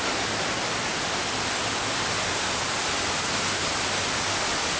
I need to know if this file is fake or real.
real